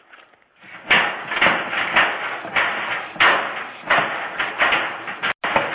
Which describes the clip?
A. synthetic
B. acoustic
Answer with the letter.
B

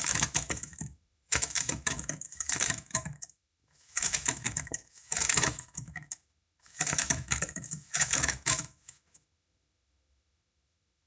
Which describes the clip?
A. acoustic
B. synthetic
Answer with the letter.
B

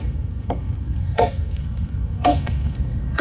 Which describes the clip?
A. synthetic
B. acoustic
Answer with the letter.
A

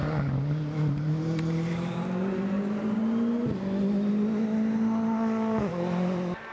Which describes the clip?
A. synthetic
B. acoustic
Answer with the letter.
B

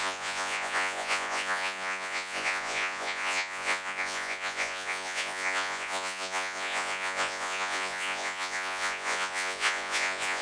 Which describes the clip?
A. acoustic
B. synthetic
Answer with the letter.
B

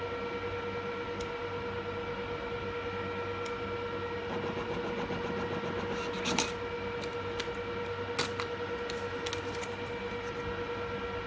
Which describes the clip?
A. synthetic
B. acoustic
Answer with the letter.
B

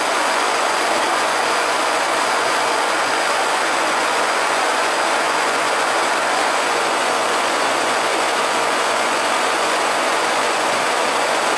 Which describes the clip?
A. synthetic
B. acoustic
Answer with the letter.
A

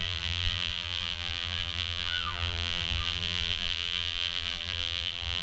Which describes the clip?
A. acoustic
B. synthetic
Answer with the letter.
B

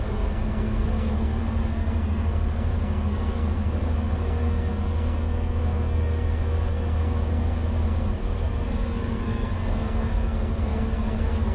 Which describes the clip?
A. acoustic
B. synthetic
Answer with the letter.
B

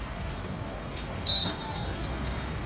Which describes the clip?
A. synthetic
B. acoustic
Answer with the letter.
A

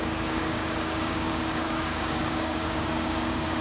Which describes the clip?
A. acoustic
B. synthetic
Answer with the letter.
B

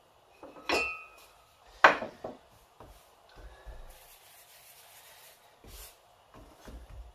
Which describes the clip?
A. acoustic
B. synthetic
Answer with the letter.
A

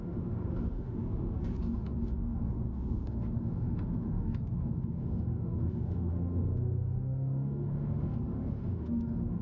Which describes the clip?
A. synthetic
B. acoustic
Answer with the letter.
A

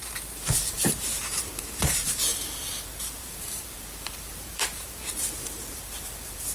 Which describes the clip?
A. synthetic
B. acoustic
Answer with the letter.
A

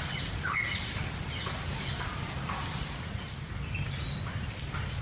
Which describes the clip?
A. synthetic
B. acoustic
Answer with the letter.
B